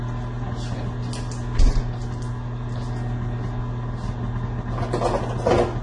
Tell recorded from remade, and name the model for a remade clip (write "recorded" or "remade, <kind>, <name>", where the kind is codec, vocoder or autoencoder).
recorded